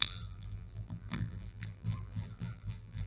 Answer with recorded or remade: remade